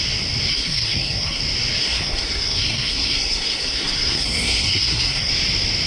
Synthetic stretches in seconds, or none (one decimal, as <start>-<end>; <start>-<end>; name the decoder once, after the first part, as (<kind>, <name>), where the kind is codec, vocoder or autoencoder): 0.5-1.4 (codec, SNAC); 1.8-5.3